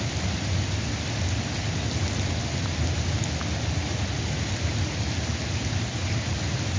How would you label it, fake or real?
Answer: real